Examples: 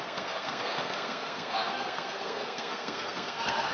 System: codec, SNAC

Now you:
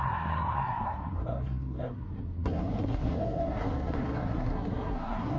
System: codec, SNAC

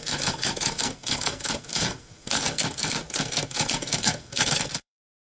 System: codec, SNAC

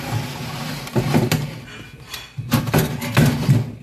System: none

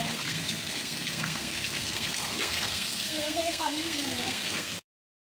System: codec, SNAC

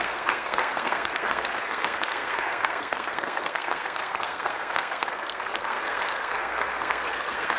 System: codec, SNAC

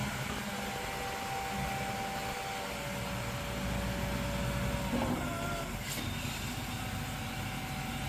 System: none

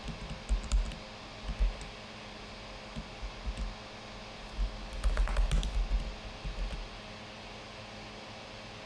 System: none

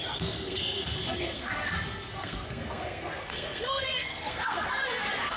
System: codec, SNAC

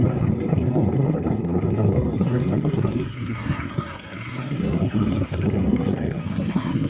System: codec, SNAC